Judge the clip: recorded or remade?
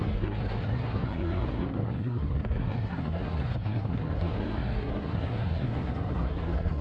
remade